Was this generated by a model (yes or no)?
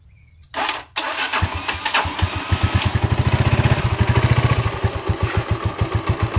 no